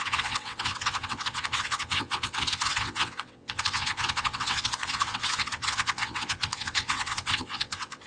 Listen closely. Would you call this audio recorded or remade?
remade